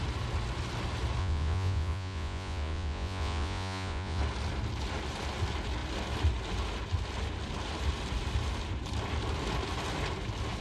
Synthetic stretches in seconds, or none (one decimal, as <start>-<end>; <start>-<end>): 1.2-4.2